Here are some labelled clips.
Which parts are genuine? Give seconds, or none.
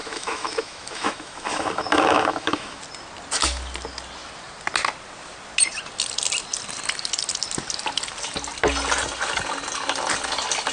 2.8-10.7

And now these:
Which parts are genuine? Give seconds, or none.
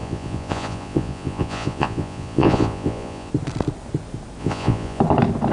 3.3-4.4; 5.0-5.5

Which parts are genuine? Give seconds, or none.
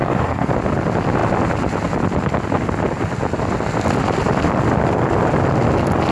0.5-6.1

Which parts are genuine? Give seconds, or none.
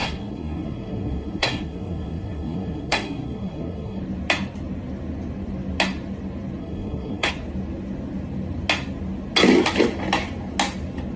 4.0-6.6; 7.3-11.2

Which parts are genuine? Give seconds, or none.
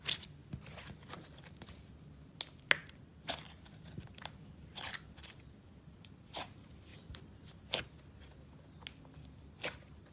0.0-0.4; 1.5-3.1; 6.5-6.9; 7.8-10.1